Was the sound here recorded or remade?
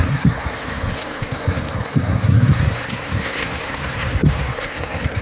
remade